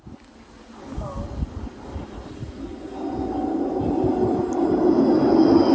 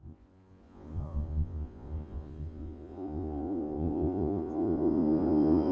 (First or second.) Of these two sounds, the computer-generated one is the second